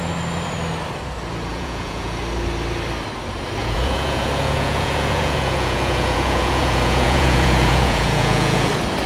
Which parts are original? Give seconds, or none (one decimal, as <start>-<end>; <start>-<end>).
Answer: 0.0-1.5; 2.2-3.6; 8.7-9.1